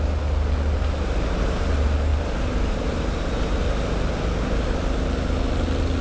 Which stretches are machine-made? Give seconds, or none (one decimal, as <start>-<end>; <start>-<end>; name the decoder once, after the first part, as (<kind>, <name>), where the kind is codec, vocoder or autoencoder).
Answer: none

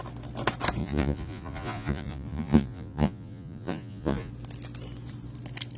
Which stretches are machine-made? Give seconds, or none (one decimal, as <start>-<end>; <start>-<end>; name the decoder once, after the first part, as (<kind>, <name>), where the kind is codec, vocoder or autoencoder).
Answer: 0.8-4.3 (vocoder, Vocos)

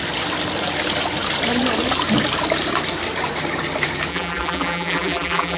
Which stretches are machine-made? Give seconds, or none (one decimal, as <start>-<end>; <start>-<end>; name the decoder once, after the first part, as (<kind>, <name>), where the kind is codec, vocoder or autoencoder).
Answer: 4.1-5.6 (vocoder, BigVGAN v2)

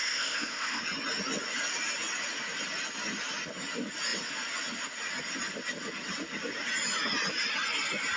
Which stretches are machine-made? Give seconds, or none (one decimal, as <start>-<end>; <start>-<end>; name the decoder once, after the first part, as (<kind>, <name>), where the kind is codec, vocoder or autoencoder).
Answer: 0.0-0.8 (codec, ZipCodec)

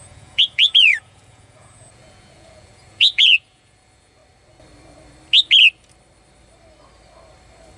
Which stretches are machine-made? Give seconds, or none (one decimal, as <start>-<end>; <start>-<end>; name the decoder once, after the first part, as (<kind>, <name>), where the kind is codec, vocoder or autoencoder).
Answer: 0.0-4.2 (vocoder, Vocos)

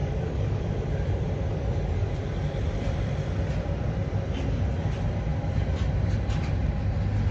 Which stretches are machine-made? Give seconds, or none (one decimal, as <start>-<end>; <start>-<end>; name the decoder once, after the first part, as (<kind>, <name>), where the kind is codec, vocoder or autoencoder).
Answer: 0.0-0.6 (codec, DAC); 1.5-2.1